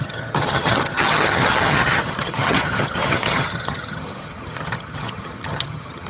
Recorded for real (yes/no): no